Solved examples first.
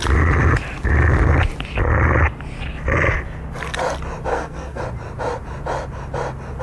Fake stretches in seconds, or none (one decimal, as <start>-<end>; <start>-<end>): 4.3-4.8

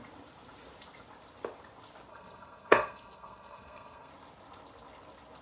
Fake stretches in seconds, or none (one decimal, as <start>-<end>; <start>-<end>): 2.1-4.1

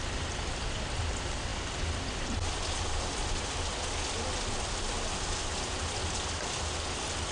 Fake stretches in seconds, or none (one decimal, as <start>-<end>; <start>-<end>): none